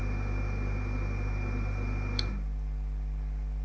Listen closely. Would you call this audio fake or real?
real